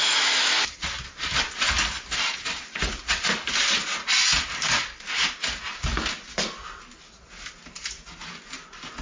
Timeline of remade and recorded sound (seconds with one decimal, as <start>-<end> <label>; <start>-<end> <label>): 0.0-0.7 remade; 0.7-9.0 recorded